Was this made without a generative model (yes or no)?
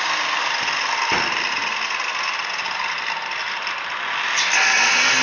yes